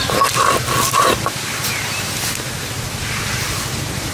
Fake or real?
real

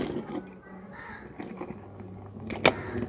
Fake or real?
real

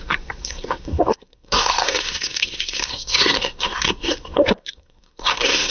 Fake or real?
fake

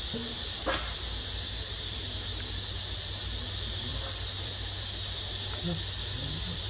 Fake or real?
fake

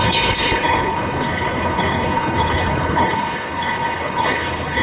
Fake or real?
fake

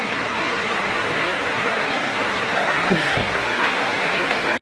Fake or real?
fake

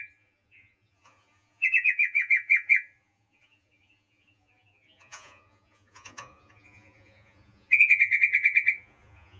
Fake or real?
fake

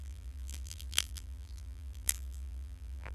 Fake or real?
fake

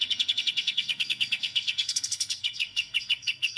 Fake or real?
fake